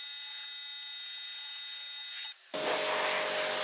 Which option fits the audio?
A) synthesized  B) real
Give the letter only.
B